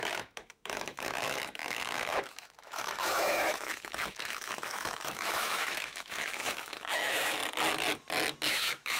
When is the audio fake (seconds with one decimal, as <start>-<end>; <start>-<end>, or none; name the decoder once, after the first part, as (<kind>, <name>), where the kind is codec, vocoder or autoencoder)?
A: 0.0-7.4 (autoencoder, DAC-VAE); 8.5-9.0